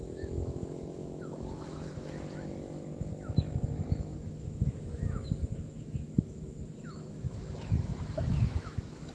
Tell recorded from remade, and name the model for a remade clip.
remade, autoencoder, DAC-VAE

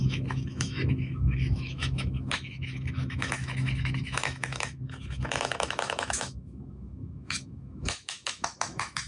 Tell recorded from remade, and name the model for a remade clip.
remade, autoencoder, DAC-VAE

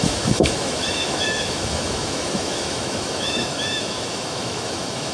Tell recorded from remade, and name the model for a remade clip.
remade, autoencoder, DAC-VAE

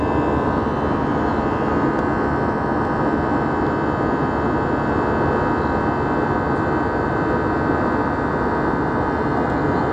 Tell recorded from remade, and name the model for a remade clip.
recorded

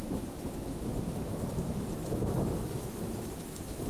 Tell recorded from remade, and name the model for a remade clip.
remade, autoencoder, DAC-VAE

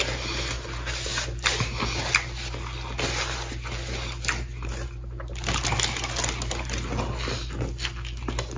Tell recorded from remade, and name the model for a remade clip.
recorded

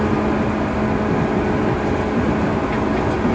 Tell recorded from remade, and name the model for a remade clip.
recorded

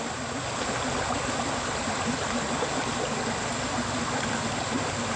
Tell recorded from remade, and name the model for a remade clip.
recorded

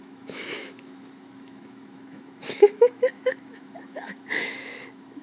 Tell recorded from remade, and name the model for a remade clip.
remade, autoencoder, DAC-VAE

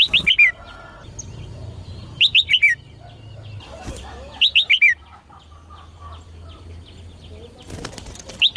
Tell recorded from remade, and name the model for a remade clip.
recorded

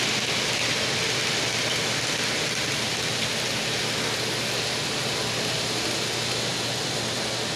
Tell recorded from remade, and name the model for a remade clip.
recorded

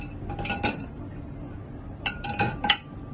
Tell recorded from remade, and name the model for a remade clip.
recorded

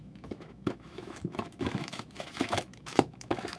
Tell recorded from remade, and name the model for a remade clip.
remade, autoencoder, DAC-VAE